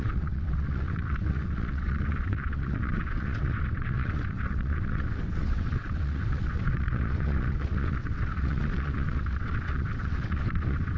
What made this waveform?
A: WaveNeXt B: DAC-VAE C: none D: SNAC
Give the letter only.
A